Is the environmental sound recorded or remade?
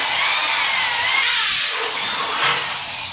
recorded